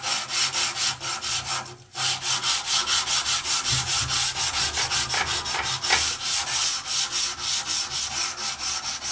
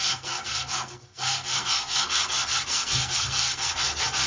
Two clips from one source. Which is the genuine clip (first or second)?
first